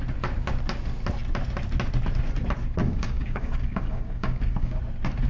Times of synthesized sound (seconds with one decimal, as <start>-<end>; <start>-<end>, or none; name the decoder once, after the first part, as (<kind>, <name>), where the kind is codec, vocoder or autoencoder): 2.8-4.8 (codec, DAC)